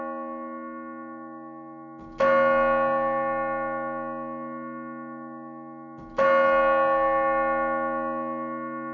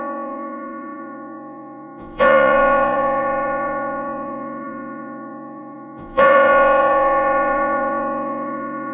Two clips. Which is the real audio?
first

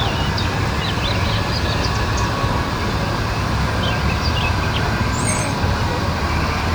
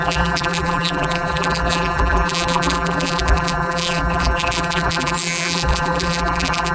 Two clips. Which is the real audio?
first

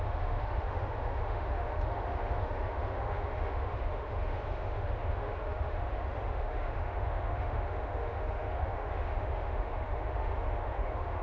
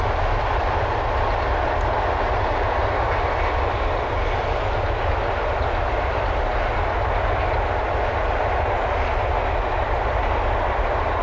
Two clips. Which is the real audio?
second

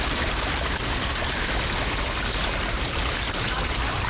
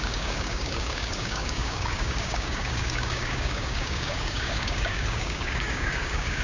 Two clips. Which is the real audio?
first